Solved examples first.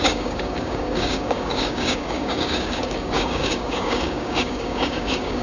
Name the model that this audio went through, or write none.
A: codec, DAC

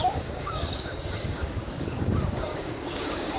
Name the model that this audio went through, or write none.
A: codec, DAC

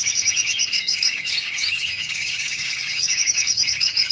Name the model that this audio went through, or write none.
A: codec, DAC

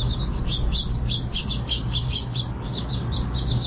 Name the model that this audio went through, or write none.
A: codec, DAC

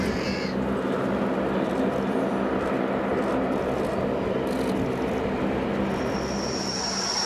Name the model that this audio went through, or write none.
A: none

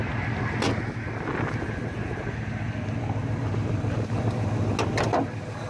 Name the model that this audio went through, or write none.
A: none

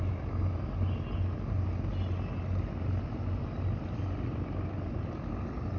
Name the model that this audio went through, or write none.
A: none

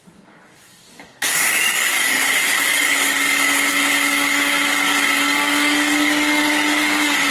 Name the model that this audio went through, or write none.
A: codec, DAC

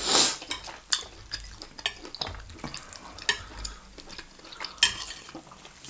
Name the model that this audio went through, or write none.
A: none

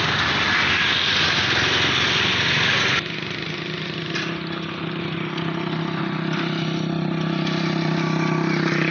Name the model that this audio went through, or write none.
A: none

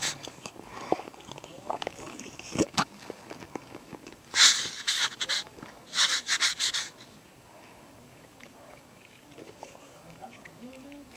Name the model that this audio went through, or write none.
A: codec, DAC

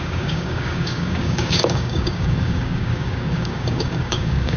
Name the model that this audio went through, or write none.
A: codec, DAC